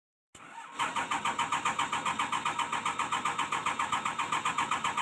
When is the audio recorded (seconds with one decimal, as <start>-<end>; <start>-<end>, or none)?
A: 0.0-5.0